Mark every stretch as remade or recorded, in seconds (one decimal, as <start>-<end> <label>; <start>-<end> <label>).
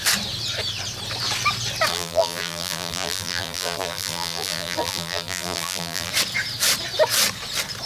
0.0-1.9 recorded; 1.9-6.1 remade; 6.1-7.9 recorded